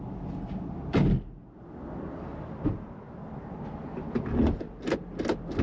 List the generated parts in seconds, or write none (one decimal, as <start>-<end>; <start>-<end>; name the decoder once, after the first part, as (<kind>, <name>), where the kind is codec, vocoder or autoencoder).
none